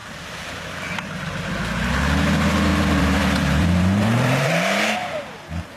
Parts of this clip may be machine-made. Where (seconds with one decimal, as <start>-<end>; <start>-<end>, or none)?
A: 0.0-1.6; 2.7-4.5